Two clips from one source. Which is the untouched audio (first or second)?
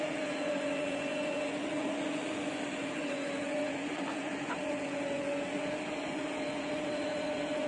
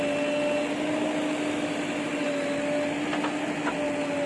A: second